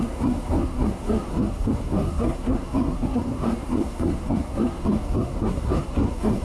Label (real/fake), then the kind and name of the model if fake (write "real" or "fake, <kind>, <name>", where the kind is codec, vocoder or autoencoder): fake, codec, SNAC